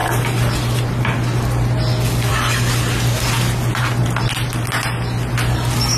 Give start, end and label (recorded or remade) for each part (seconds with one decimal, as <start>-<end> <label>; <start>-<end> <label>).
0.0-6.0 recorded